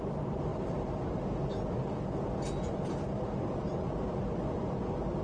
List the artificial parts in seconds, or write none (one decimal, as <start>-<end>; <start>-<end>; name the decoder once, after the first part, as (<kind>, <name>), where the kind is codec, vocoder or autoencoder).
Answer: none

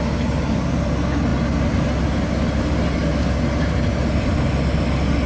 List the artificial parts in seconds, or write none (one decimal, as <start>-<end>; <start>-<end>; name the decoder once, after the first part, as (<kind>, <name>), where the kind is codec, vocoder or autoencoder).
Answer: none

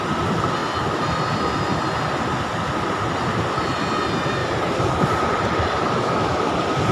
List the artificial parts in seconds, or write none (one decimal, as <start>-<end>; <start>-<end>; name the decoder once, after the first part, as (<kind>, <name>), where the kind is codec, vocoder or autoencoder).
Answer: 4.4-6.5 (vocoder, BigVGAN v2)

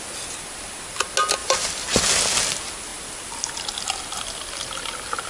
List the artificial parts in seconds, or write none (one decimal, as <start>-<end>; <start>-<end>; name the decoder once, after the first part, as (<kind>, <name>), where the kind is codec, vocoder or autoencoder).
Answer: 1.4-2.0 (vocoder, BigVGAN v2); 2.9-3.5